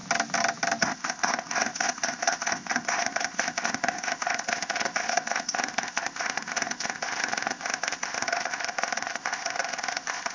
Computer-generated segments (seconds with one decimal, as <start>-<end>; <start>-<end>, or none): 0.8-10.3